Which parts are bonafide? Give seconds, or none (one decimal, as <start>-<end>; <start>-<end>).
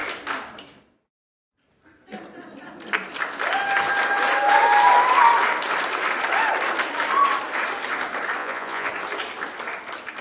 0.0-8.4; 8.9-10.2